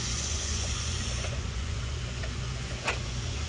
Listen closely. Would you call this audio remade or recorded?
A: remade